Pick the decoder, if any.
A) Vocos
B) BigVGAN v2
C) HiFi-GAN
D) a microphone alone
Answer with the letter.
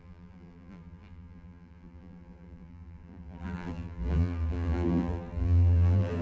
B